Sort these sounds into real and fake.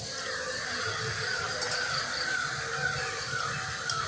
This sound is real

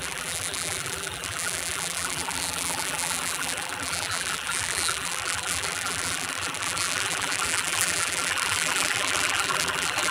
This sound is fake